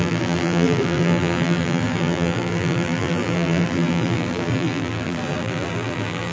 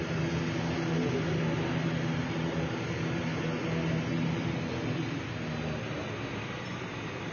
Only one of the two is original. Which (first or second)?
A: second